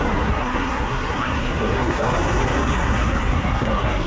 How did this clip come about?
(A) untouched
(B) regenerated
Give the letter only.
B